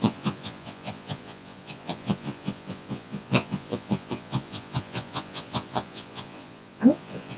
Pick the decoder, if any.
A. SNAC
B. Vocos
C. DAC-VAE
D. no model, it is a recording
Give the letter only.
B